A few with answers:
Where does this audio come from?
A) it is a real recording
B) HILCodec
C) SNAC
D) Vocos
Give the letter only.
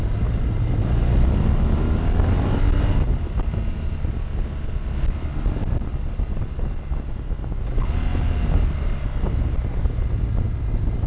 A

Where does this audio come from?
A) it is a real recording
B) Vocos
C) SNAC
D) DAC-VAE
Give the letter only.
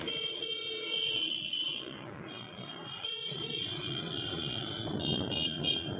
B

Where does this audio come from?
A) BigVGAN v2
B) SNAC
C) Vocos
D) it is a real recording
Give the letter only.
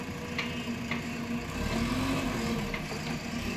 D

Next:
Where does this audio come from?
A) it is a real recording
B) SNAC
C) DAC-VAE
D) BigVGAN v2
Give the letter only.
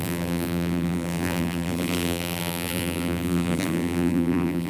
D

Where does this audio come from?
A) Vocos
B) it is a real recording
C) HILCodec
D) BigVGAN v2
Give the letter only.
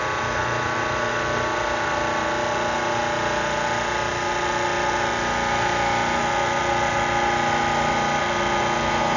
B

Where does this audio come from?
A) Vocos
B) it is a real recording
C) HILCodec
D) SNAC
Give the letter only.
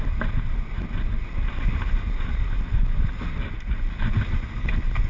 B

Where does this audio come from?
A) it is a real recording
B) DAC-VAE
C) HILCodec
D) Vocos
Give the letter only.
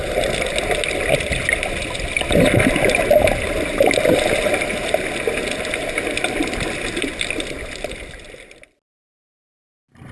A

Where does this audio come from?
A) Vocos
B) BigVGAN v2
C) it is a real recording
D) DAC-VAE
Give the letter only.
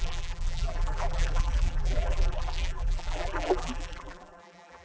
B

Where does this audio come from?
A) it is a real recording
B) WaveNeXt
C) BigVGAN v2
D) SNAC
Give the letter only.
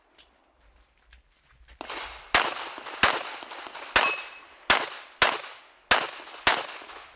A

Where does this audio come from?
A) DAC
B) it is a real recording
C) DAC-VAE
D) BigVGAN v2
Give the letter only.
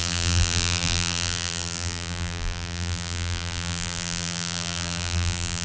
D